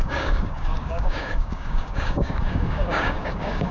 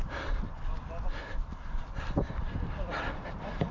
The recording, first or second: second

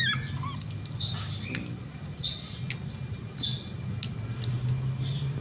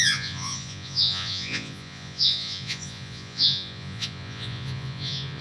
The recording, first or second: first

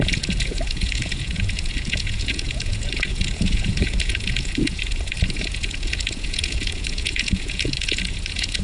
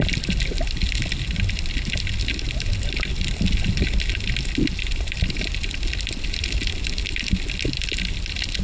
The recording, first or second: second